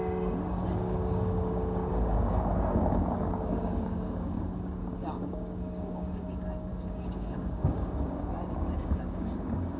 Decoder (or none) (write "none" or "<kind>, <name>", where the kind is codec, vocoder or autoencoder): codec, DAC